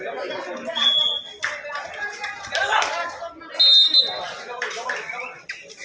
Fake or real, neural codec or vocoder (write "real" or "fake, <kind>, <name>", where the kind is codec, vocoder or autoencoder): real